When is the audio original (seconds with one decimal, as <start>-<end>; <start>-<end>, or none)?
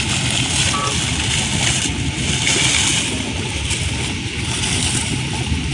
0.0-5.7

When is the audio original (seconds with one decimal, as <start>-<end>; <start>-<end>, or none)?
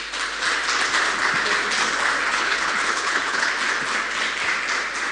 0.0-2.3; 3.5-5.1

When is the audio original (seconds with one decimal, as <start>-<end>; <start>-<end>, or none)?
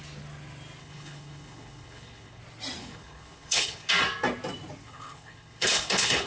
0.0-0.8; 2.4-2.8; 3.9-4.8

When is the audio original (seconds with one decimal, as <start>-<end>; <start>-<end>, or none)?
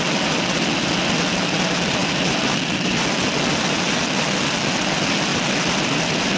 0.0-6.4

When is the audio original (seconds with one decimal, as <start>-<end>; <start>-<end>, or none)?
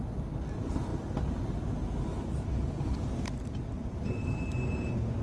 0.0-5.2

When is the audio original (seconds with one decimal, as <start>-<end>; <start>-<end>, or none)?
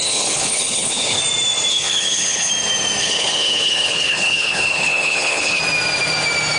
1.2-1.7; 2.5-3.0; 5.6-6.6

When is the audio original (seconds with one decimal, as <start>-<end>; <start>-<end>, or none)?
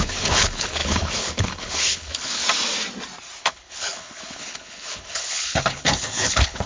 2.4-3.4